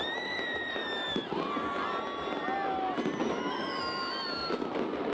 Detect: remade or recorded recorded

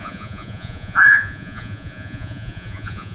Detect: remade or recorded remade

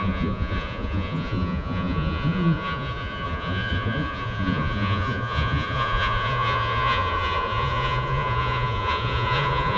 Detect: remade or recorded remade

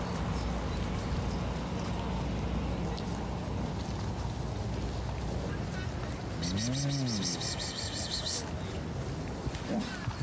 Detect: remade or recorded recorded